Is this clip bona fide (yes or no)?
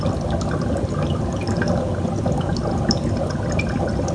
yes